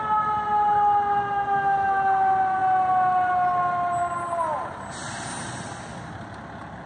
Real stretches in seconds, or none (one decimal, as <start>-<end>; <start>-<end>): 0.0-6.9